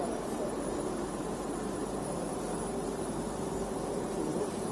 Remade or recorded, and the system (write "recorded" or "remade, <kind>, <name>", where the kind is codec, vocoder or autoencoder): remade, vocoder, BigVGAN v2